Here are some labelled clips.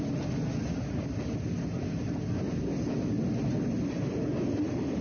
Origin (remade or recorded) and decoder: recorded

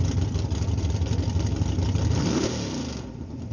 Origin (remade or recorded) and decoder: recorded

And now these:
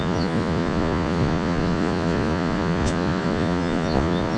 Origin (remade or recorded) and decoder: remade, vocoder, Vocos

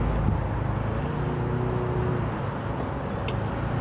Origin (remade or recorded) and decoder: recorded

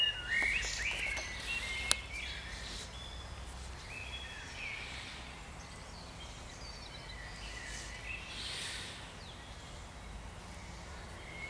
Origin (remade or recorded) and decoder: recorded